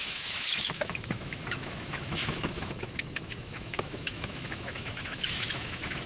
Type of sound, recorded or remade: remade